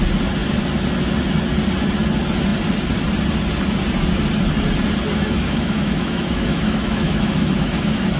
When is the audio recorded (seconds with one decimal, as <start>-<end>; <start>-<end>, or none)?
0.0-5.1